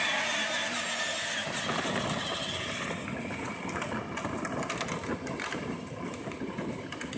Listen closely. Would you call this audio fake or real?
real